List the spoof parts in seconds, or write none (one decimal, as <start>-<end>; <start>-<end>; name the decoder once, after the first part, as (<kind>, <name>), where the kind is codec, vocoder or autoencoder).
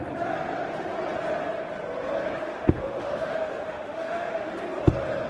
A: 2.4-4.5 (autoencoder, DAC-VAE)